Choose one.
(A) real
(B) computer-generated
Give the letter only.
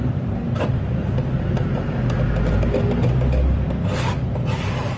A